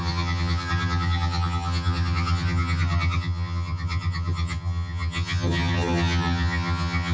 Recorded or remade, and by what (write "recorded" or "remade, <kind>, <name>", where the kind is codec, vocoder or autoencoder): remade, vocoder, HiFi-GAN